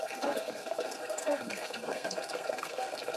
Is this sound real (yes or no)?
no